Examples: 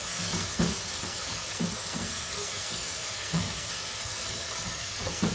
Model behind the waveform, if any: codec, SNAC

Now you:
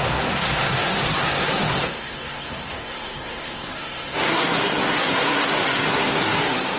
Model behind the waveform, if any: codec, SNAC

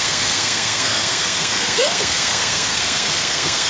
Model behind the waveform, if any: codec, SNAC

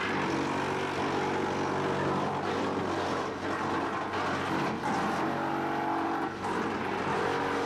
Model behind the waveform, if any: none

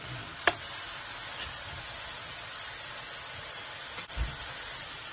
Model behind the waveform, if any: none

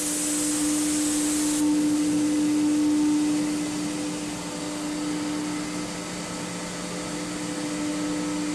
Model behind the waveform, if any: none